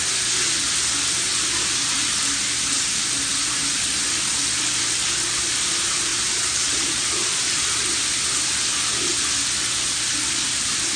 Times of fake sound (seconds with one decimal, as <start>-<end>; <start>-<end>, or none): 6.1-7.6